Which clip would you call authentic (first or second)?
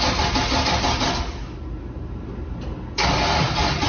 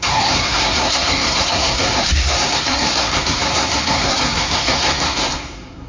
first